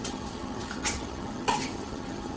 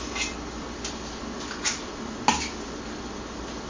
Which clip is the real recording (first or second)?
second